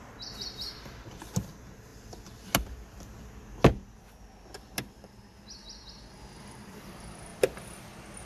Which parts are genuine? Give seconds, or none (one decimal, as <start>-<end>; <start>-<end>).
0.0-8.2